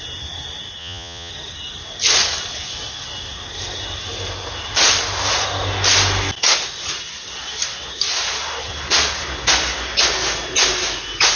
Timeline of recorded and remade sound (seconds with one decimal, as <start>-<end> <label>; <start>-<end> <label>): 0.0-0.8 recorded; 0.8-1.3 remade; 1.3-11.3 recorded